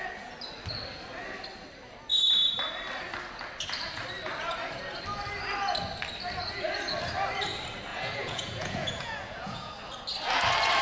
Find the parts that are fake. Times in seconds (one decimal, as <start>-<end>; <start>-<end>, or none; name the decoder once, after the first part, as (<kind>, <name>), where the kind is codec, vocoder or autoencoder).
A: 7.9-9.7 (vocoder, Vocos)